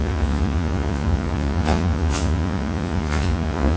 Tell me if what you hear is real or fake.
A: fake